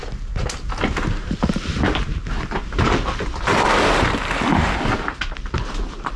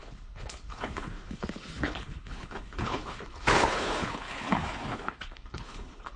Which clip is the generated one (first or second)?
second